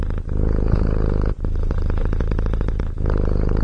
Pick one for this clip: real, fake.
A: real